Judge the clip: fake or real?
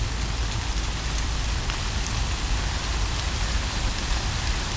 real